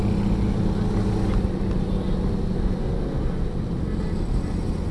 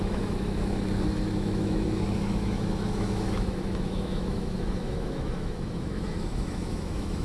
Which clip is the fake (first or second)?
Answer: second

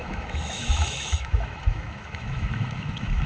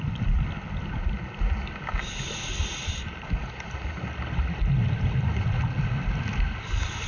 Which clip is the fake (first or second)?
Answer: first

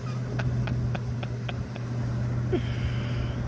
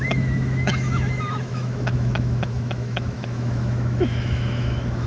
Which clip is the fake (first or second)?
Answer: second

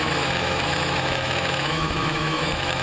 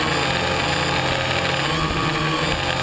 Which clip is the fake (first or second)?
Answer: first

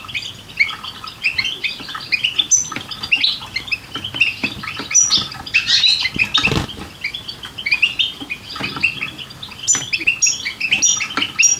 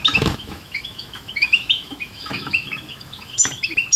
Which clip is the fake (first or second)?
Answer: second